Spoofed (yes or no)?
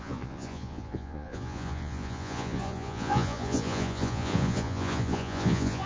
yes